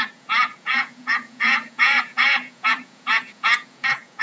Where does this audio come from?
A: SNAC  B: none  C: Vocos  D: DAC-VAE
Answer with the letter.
C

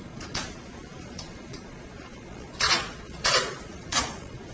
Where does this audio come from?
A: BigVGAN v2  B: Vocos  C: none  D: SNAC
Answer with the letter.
B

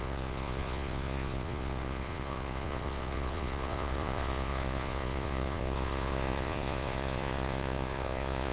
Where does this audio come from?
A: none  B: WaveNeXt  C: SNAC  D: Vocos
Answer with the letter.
D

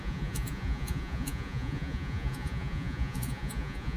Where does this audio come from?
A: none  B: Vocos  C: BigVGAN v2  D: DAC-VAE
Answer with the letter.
B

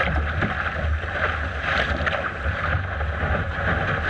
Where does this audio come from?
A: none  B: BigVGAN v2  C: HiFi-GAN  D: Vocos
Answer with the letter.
A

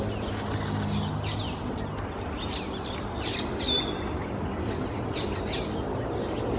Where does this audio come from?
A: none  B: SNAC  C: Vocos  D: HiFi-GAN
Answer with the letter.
A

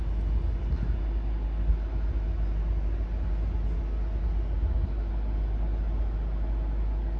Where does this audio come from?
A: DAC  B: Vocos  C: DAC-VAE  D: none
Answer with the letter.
D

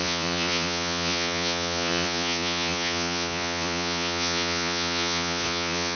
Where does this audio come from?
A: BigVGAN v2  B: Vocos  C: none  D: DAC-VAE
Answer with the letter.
B